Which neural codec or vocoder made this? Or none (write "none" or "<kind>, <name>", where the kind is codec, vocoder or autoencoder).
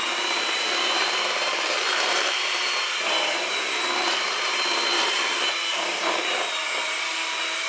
vocoder, BigVGAN v2